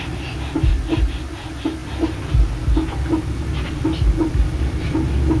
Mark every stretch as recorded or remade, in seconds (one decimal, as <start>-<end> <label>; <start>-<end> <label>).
0.0-5.4 recorded